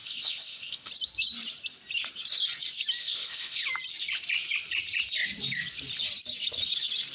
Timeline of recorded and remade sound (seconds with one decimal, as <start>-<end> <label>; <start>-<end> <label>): 0.0-0.9 remade; 0.9-3.0 recorded; 3.0-3.6 remade; 3.6-7.1 recorded